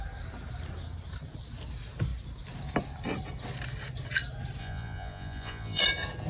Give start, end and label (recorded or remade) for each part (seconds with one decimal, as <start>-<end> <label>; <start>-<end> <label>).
0.0-4.6 recorded; 4.6-5.8 remade; 5.8-6.3 recorded